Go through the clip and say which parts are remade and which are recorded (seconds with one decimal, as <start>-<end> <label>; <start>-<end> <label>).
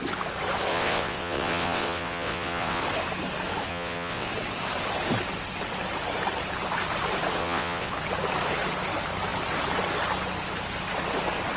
0.0-0.7 recorded; 0.7-2.8 remade; 2.8-3.7 recorded; 3.7-4.3 remade; 4.3-7.4 recorded; 7.4-7.9 remade; 7.9-11.6 recorded